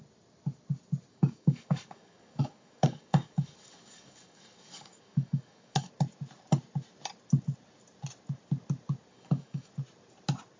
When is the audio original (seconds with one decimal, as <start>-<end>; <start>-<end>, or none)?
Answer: 0.0-1.1; 5.9-9.1; 9.7-10.6